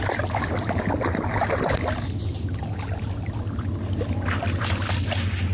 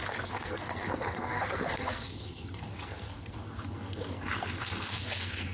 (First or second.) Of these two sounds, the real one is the first